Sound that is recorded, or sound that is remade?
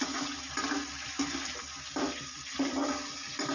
recorded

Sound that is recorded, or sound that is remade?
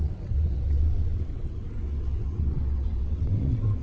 remade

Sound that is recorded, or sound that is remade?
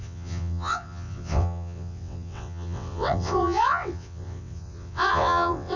remade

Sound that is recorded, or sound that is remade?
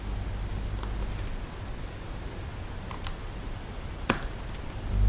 recorded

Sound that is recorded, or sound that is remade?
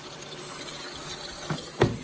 recorded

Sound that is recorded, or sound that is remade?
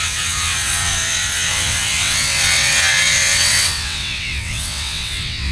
remade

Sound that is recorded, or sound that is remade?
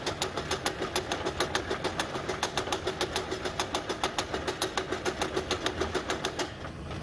recorded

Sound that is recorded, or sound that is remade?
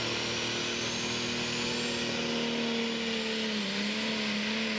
recorded